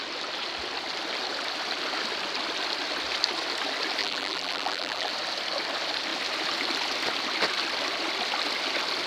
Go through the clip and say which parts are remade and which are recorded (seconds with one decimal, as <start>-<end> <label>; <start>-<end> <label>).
0.0-4.0 recorded; 4.0-5.1 remade; 5.1-9.1 recorded